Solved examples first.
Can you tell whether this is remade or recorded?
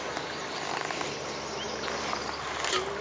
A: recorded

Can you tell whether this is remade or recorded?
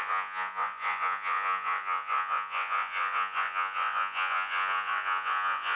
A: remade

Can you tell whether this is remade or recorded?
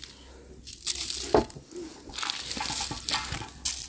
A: recorded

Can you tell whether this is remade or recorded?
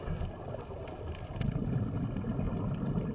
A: recorded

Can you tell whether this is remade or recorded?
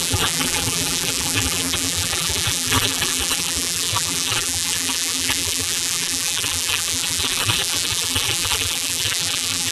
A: remade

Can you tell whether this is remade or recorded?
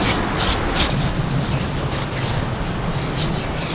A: recorded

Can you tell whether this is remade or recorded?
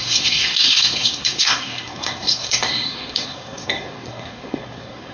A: remade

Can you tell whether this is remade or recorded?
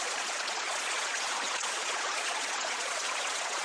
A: remade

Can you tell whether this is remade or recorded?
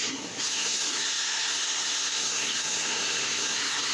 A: remade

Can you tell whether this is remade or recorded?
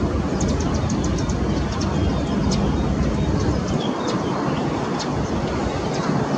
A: recorded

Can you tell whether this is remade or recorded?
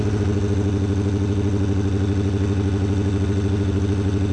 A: recorded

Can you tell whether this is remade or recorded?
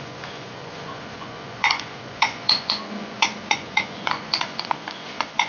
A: remade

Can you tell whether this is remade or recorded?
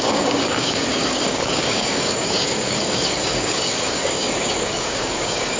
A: remade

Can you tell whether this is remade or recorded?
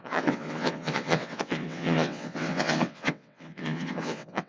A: remade